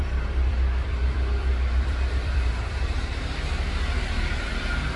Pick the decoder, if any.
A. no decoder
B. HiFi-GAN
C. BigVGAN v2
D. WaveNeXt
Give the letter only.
C